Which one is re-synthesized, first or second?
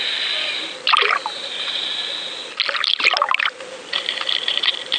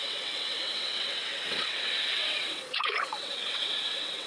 second